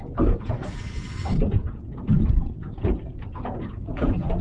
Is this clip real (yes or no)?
no